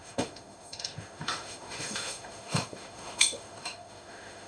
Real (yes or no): no